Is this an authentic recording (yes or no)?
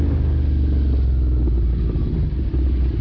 yes